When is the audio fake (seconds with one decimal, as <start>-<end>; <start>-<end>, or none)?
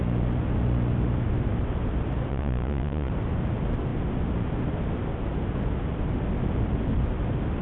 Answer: 2.3-3.1